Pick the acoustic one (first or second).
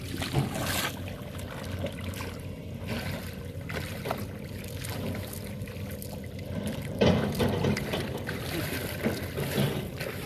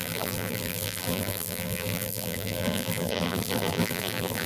first